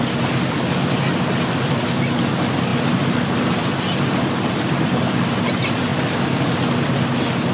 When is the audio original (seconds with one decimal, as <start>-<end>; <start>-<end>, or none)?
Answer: 0.0-7.5